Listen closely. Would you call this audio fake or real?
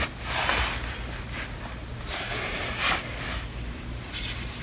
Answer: real